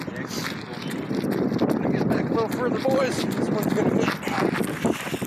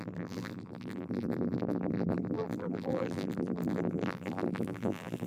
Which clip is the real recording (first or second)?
first